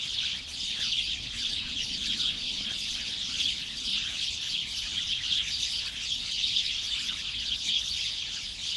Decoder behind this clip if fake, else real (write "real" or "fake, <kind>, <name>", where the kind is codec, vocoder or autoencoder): fake, codec, HILCodec